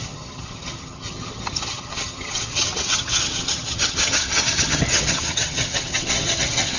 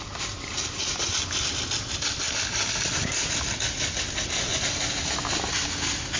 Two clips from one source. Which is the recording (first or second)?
second